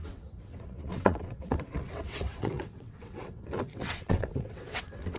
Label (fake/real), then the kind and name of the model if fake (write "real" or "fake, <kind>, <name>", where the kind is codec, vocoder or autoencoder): fake, vocoder, WaveNeXt